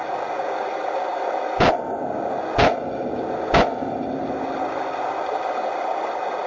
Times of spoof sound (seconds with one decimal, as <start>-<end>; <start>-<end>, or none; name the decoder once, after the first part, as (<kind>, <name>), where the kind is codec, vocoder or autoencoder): none